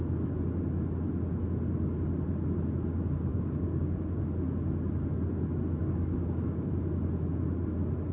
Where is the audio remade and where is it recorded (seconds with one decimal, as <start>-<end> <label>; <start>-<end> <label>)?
0.0-3.3 recorded; 3.3-4.2 remade; 4.2-5.8 recorded; 5.8-6.7 remade; 6.7-8.1 recorded